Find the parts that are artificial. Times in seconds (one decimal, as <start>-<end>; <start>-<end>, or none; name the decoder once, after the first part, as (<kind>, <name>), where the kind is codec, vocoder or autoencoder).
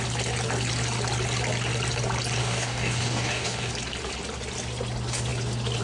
2.4-3.7 (codec, DAC)